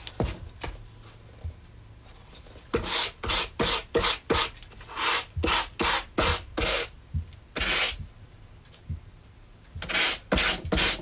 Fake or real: real